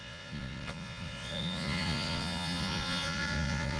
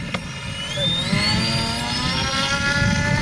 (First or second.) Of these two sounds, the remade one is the first